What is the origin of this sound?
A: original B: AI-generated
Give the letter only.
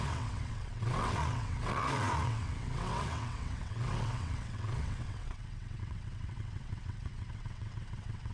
B